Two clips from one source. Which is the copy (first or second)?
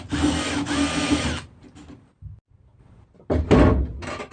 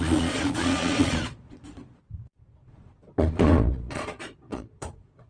second